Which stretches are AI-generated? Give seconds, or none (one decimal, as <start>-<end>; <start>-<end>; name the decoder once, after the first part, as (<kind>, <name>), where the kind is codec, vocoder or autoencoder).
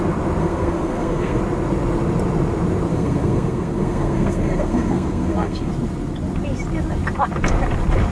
0.4-1.4 (codec, SNAC); 2.9-5.7